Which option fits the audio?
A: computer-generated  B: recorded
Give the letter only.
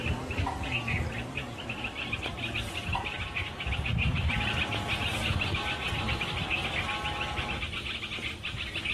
A